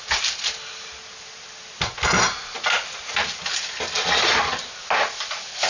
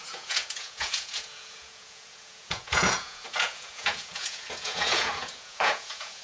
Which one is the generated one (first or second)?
second